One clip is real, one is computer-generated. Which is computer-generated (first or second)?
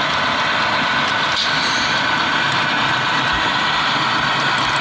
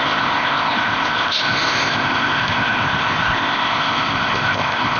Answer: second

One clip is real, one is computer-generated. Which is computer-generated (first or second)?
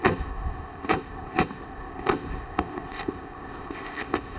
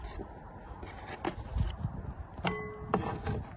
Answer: first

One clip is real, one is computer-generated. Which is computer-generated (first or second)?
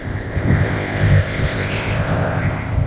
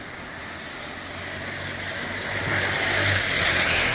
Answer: first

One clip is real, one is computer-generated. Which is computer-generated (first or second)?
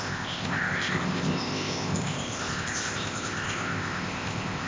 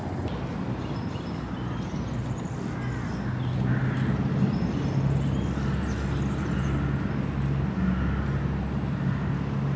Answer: first